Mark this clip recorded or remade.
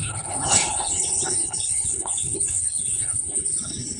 remade